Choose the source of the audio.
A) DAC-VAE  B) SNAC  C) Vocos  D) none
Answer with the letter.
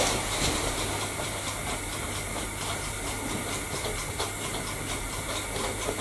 D